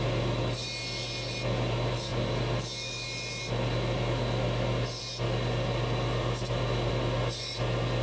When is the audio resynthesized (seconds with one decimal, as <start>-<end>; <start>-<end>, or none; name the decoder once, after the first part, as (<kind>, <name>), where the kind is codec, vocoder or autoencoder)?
none